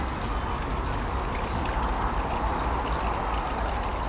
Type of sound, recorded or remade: recorded